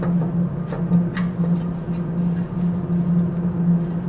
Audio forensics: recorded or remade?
recorded